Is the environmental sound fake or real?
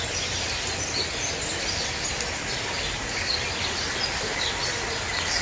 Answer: real